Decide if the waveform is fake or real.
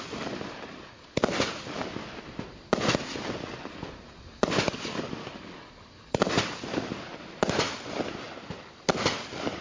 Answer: real